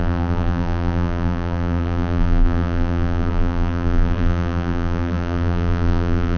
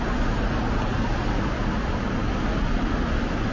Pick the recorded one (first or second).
second